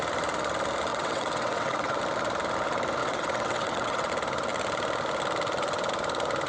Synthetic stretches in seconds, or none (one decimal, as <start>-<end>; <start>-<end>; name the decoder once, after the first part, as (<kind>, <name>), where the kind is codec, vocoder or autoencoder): 0.9-2.0 (vocoder, WaveNeXt); 3.0-4.1